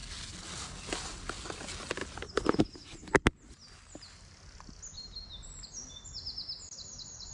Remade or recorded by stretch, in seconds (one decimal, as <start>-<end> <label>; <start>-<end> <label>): 0.0-7.3 recorded